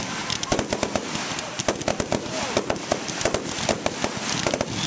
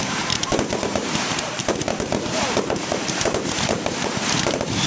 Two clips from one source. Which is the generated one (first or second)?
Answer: second